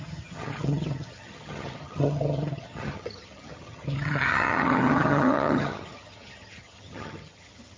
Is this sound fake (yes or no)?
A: yes